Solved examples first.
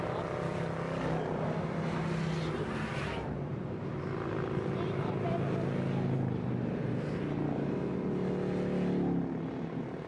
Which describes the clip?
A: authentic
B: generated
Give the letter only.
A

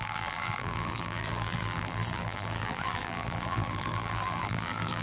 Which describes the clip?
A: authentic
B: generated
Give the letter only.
B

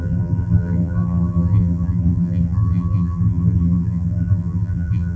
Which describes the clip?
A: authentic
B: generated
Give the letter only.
B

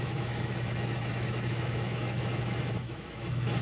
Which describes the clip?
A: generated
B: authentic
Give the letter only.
A